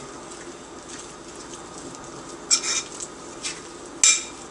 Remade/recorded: recorded